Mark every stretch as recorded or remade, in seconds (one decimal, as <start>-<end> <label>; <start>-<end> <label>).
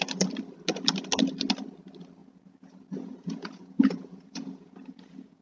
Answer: 0.0-2.2 recorded; 2.2-5.4 remade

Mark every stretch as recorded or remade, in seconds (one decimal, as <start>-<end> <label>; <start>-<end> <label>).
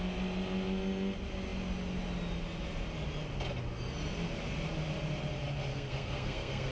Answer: 0.0-5.7 recorded; 5.7-6.7 remade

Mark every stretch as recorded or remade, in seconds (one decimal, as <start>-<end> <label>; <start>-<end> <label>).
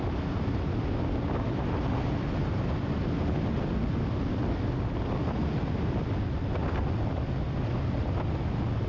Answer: 0.0-8.9 recorded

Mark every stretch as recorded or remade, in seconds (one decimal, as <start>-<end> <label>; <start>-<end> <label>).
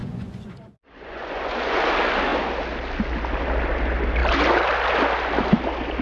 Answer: 0.0-1.8 remade; 1.8-6.0 recorded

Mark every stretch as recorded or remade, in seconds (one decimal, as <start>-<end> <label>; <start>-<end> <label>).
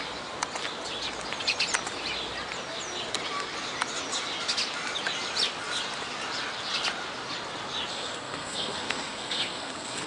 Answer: 0.0-7.9 recorded; 7.9-10.1 remade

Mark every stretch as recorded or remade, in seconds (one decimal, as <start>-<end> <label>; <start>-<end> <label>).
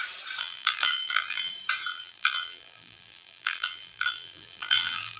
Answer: 0.0-0.4 recorded; 0.4-1.5 remade; 1.5-1.9 recorded; 1.9-5.2 remade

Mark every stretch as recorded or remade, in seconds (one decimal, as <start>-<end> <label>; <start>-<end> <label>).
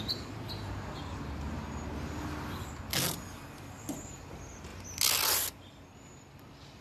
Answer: 0.0-6.8 recorded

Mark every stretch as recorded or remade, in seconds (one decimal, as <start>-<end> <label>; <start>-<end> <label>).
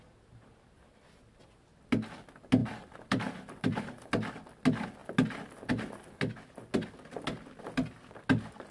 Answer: 0.0-2.6 recorded; 2.6-4.1 remade; 4.1-8.7 recorded